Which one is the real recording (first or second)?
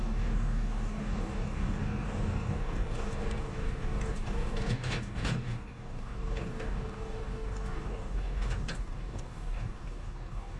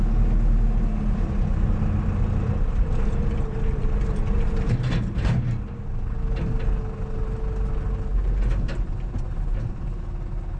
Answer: second